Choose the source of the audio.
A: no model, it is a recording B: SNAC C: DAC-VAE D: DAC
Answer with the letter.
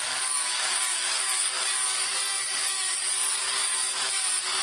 D